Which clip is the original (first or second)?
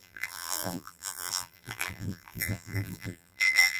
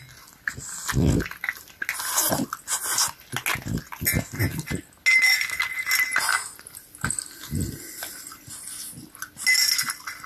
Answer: second